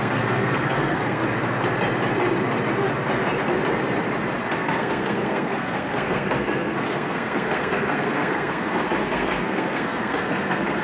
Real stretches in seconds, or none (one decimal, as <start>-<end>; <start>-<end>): 1.2-4.5